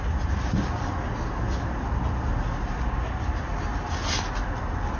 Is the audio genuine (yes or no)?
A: yes